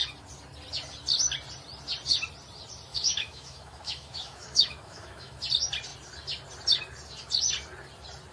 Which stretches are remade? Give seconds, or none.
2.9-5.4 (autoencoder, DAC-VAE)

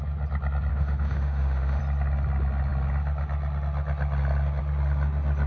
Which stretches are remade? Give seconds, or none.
0.7-1.8 (autoencoder, DAC-VAE)

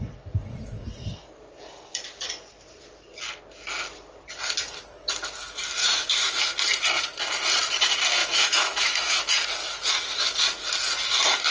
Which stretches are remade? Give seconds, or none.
5.8-6.4 (autoencoder, DAC-VAE); 8.2-9.2

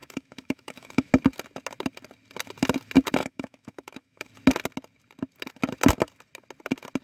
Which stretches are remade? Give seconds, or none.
0.0-1.1 (autoencoder, DAC-VAE); 3.2-4.3

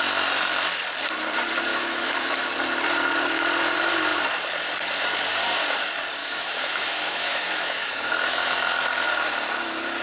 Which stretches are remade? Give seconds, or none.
1.7-2.5 (autoencoder, DAC-VAE); 6.2-8.5